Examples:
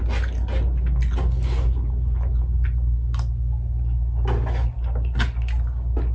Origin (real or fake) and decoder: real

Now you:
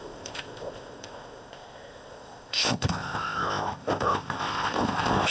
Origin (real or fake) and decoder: fake, codec, ZipCodec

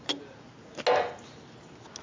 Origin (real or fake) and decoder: real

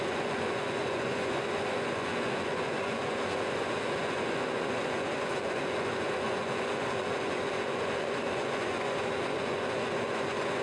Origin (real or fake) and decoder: fake, vocoder, Vocos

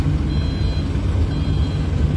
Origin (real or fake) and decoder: real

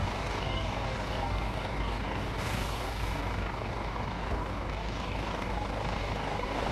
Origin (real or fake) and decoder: fake, codec, DAC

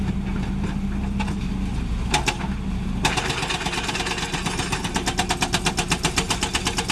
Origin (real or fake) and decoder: real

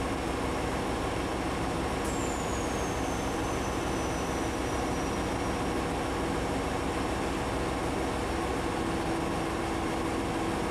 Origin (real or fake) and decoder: real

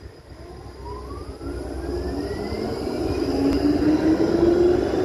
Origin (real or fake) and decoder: real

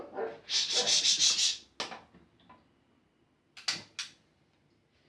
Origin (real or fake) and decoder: real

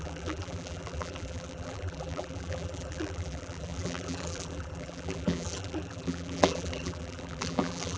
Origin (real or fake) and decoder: fake, vocoder, BigVGAN v2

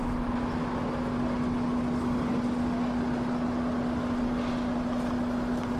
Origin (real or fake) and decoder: real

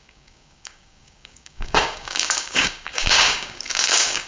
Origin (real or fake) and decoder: fake, codec, DAC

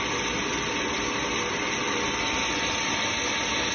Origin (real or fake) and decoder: real